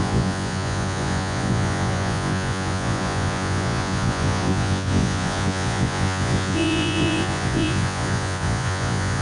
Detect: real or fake fake